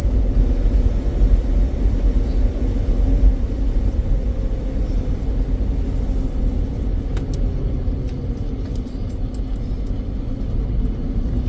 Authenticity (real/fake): real